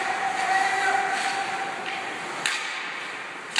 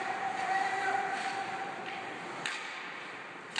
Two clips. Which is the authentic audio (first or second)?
first